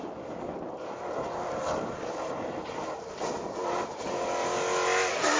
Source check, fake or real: real